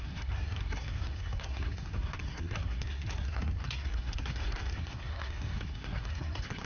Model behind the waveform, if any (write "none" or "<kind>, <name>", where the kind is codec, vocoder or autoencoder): codec, SNAC